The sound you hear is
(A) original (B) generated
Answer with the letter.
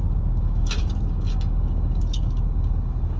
B